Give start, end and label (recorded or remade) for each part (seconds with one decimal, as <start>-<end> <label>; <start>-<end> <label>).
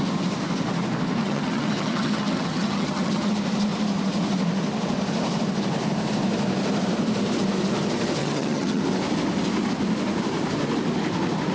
0.0-1.2 recorded; 1.2-3.3 remade; 3.3-8.2 recorded; 8.2-8.8 remade; 8.8-11.5 recorded